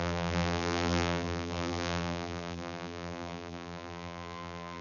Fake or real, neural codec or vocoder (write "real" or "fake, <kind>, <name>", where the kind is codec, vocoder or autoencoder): fake, vocoder, BigVGAN v2